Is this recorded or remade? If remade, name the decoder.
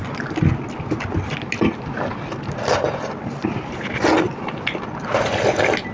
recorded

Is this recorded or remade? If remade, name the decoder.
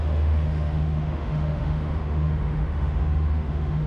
remade, autoencoder, DAC-VAE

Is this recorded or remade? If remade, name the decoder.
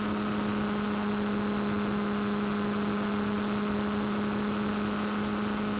recorded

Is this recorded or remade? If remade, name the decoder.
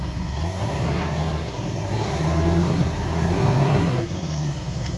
remade, codec, SNAC